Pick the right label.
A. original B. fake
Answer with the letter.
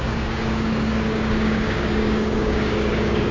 B